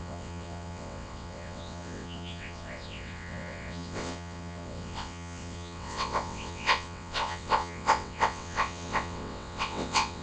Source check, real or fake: fake